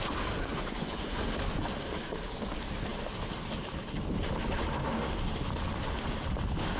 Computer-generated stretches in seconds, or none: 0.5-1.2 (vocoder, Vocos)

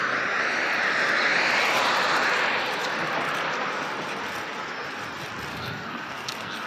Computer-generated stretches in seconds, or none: 5.5-6.7 (codec, SNAC)

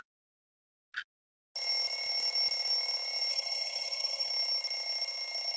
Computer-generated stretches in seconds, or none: 3.3-4.3 (vocoder, HiFi-GAN)

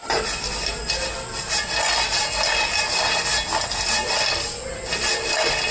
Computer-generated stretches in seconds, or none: none

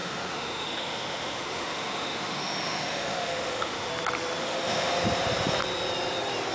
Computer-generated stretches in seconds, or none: 0.0-3.9 (autoencoder, DAC-VAE); 4.4-4.9

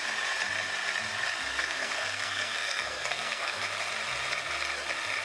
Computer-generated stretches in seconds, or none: 1.5-3.6 (codec, SNAC)